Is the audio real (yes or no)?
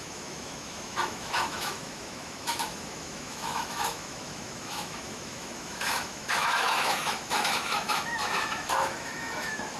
no